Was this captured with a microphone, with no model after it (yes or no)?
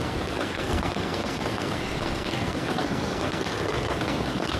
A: no